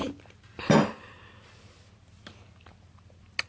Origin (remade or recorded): recorded